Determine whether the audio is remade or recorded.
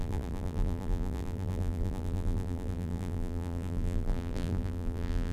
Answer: remade